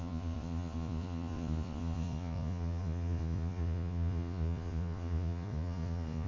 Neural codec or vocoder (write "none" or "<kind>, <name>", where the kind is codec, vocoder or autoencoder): vocoder, Vocos